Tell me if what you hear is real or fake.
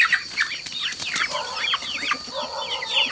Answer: real